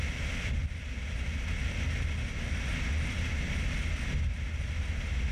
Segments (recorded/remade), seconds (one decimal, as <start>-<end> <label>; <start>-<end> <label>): 0.0-5.3 recorded